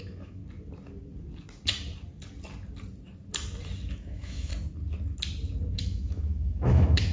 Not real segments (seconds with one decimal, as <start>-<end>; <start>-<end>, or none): 0.0-0.4; 3.9-4.5; 5.8-7.1